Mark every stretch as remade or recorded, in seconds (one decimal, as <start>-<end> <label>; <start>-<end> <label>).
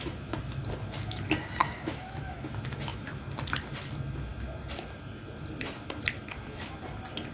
0.0-1.6 recorded; 1.6-2.5 remade; 2.5-7.3 recorded